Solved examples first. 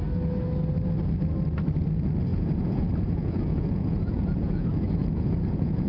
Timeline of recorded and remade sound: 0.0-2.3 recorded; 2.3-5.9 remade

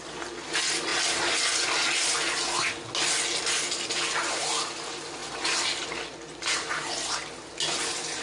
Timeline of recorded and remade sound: 0.0-8.2 recorded

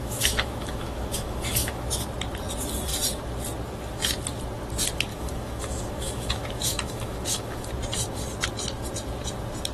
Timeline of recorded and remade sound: 0.0-1.9 remade; 1.9-5.1 recorded; 5.1-7.7 remade; 7.7-9.7 recorded

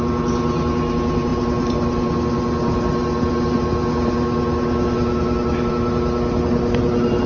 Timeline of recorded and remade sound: 0.0-7.3 recorded

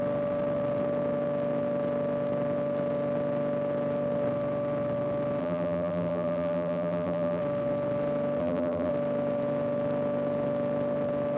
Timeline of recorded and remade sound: 0.0-5.4 recorded; 5.4-7.4 remade; 7.4-8.4 recorded; 8.4-8.9 remade; 8.9-11.4 recorded